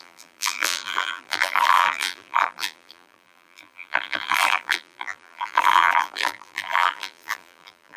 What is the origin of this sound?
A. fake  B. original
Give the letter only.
A